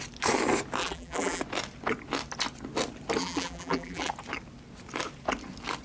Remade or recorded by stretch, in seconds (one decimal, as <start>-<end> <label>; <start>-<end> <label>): 0.0-0.8 recorded; 0.8-1.4 remade; 1.4-3.2 recorded; 3.2-4.1 remade; 4.1-5.8 recorded